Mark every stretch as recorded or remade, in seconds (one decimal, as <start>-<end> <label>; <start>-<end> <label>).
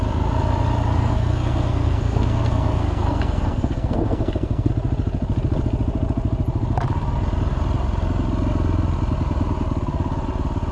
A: 0.0-1.0 recorded; 1.0-4.7 remade; 4.7-10.7 recorded